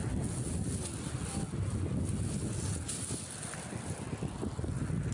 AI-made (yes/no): no